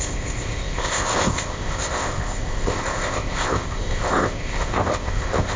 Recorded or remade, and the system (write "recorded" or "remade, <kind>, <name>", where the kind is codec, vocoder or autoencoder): remade, codec, ZipCodec